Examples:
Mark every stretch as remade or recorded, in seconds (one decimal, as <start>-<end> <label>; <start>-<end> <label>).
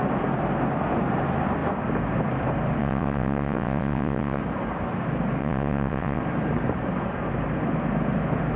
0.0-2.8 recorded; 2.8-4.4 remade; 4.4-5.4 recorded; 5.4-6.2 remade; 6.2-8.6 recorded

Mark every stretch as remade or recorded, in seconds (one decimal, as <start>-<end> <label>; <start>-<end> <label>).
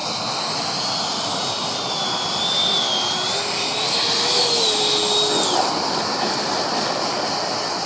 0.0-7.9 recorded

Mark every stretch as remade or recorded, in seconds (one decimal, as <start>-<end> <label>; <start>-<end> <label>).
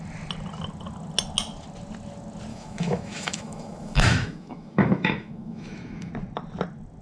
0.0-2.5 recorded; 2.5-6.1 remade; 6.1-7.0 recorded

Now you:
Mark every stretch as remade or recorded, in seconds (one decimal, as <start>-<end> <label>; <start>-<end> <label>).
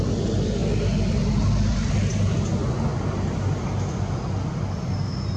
0.0-5.4 recorded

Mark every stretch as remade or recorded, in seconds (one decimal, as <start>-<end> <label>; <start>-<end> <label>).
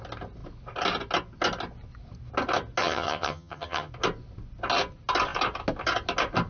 0.0-2.8 recorded; 2.8-3.9 remade; 3.9-6.5 recorded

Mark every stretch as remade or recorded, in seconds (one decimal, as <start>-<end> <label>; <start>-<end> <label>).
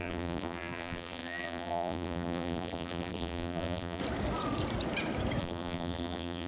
0.0-4.0 remade; 4.0-5.4 recorded; 5.4-6.5 remade